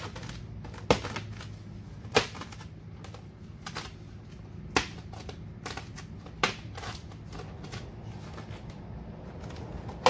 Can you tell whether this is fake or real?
real